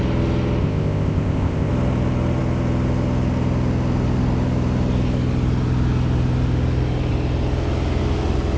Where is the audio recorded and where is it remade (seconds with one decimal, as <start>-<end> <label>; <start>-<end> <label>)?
0.0-0.6 recorded; 0.6-1.7 remade; 1.7-8.6 recorded